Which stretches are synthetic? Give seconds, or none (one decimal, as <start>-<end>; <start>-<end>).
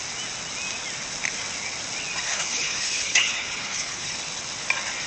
2.3-4.2